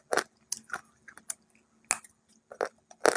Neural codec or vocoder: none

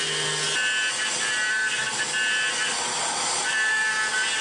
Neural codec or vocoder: none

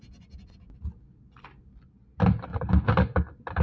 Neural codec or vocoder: none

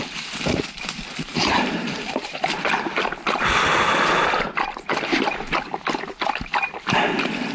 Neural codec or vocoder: none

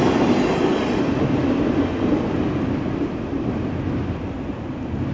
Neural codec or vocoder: none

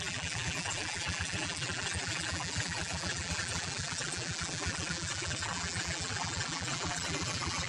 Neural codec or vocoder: vocoder, BigVGAN v2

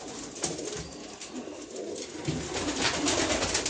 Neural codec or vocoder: none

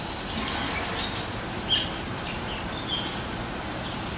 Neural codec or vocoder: none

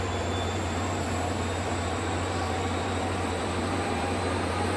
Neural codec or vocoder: vocoder, BigVGAN v2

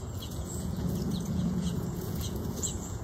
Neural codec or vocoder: vocoder, Vocos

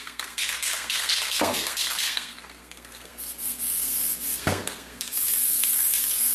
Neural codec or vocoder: codec, SNAC